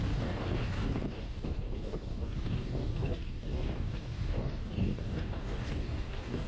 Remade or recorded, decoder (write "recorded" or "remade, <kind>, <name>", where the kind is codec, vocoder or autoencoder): remade, codec, DAC